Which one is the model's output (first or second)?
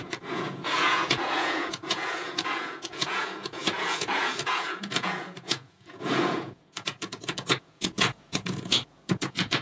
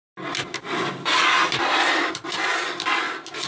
first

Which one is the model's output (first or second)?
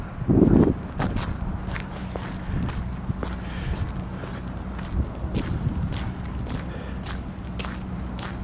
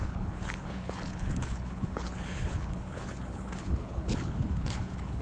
second